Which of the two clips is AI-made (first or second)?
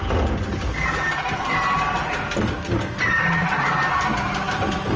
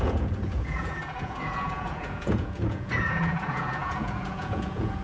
second